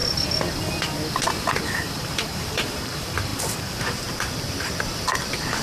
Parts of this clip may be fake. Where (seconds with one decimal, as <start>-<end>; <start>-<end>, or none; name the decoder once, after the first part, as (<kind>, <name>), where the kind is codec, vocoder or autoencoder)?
1.5-5.6 (vocoder, BigVGAN v2)